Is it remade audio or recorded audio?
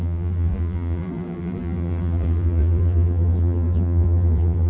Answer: remade